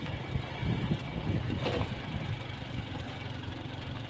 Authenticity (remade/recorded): recorded